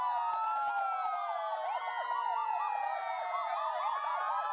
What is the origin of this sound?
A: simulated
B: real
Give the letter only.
B